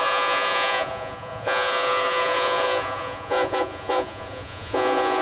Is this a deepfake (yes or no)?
yes